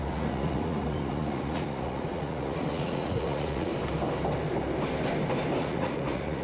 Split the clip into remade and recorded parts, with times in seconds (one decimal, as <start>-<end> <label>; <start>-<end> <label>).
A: 0.0-3.7 remade; 3.7-5.6 recorded; 5.6-6.4 remade